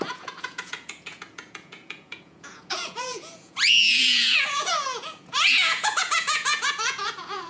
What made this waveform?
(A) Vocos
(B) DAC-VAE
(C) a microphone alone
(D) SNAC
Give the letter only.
A